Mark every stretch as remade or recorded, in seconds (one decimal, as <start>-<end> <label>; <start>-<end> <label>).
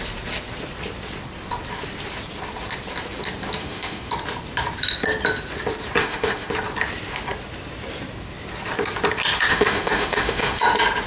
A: 0.0-3.6 recorded; 3.6-4.1 remade; 4.1-6.0 recorded; 6.0-6.5 remade; 6.5-9.5 recorded; 9.5-10.6 remade; 10.6-11.1 recorded